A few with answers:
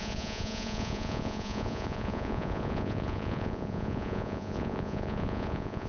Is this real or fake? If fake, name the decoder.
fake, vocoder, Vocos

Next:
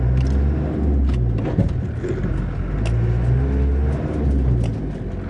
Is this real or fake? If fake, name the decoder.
real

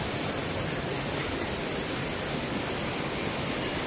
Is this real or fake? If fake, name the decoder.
real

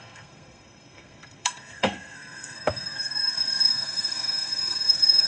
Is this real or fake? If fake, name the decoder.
fake, codec, SNAC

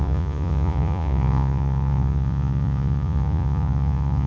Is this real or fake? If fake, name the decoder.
fake, vocoder, Vocos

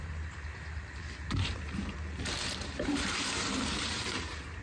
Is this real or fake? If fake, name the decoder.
fake, vocoder, BigVGAN v2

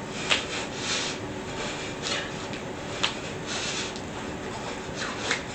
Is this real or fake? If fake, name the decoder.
real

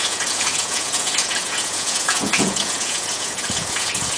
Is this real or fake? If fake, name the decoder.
fake, vocoder, Vocos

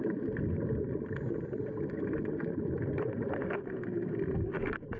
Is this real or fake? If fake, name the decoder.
real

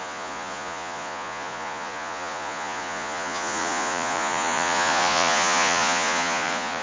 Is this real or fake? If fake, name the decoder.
fake, vocoder, Vocos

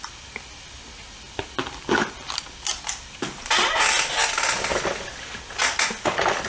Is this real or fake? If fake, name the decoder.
real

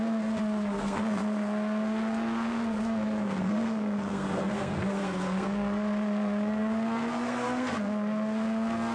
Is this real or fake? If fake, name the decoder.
fake, codec, SNAC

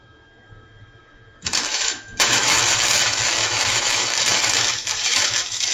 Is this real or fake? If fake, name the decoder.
fake, autoencoder, DAC-VAE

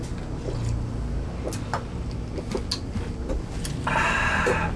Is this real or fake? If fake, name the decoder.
real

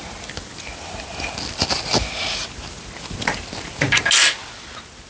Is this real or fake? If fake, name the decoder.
real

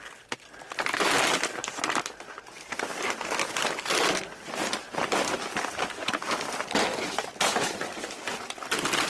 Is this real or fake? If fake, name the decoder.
fake, vocoder, BigVGAN v2